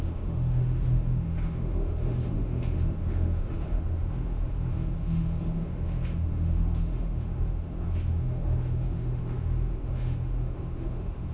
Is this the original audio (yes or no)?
no